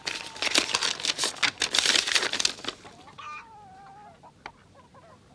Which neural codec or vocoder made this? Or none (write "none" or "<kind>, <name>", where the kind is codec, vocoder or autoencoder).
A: none